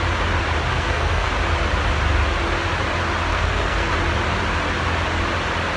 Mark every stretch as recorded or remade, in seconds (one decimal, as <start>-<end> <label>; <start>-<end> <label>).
0.0-0.7 recorded; 0.7-1.3 remade; 1.3-3.3 recorded; 3.3-3.9 remade; 3.9-5.8 recorded